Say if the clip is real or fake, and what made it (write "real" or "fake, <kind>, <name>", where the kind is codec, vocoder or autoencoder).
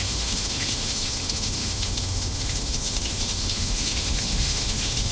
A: fake, autoencoder, DAC-VAE